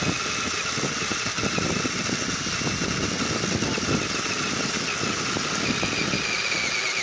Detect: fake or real real